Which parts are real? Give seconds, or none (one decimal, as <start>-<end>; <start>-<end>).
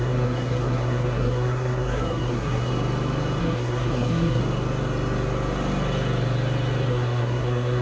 2.7-3.4; 4.4-6.9